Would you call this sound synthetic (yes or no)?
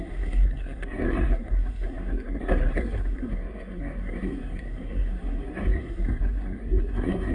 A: yes